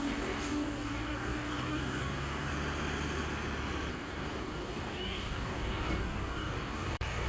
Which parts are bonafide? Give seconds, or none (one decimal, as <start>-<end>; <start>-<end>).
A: 2.5-3.9